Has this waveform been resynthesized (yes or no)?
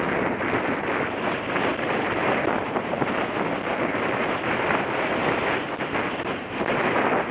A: no